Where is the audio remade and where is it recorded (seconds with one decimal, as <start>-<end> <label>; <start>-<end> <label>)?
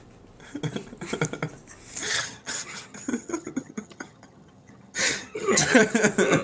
0.0-2.0 recorded; 2.0-5.8 remade; 5.8-6.4 recorded